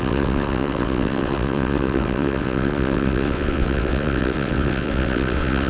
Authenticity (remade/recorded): remade